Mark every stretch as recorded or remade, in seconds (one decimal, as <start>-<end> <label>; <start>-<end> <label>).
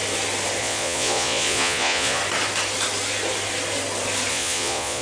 0.0-0.6 recorded; 0.6-2.2 remade; 2.2-4.3 recorded; 4.3-5.0 remade